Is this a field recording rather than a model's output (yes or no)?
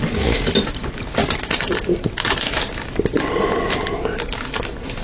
yes